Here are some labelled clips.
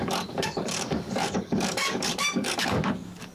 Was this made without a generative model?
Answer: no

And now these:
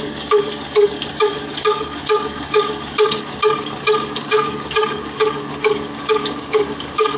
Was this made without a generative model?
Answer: no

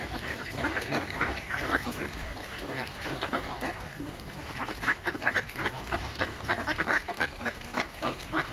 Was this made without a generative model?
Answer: no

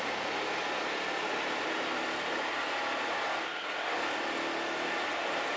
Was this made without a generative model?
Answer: yes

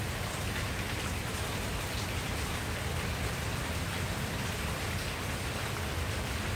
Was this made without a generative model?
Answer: yes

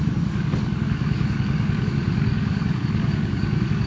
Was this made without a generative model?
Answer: no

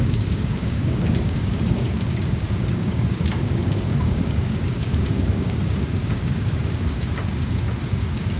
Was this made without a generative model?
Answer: no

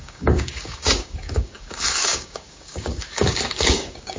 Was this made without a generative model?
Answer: no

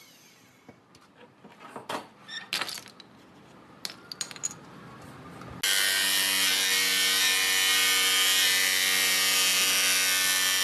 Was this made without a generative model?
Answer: yes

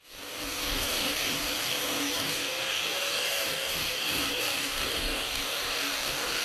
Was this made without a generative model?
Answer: no